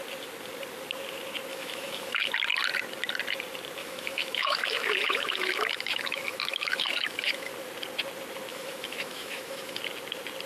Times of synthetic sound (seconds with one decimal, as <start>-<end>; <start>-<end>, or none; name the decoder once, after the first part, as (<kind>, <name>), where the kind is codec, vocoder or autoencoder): 1.5-2.3 (autoencoder, DAC-VAE); 3.8-7.5; 8.5-9.8